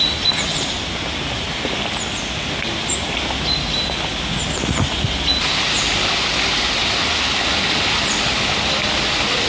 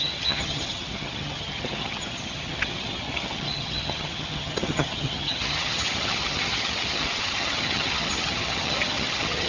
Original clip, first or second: first